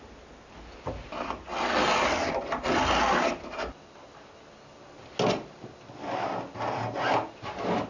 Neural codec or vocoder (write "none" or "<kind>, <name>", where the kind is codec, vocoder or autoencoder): none